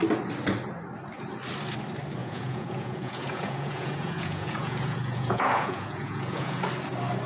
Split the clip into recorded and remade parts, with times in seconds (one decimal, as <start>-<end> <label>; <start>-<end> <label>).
0.0-2.2 recorded; 2.2-6.6 remade; 6.6-7.3 recorded